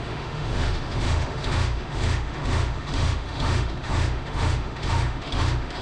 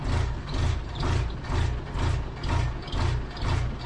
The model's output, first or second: first